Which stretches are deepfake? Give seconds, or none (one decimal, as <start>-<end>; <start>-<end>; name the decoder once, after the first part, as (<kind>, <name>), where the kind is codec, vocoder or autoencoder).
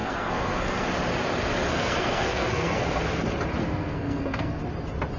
0.0-0.9 (codec, SNAC); 1.7-2.8; 3.6-4.6